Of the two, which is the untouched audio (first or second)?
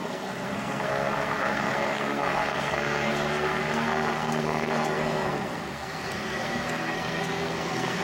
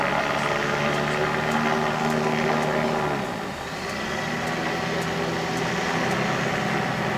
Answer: second